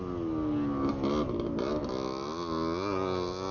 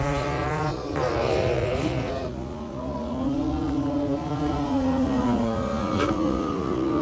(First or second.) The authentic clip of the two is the first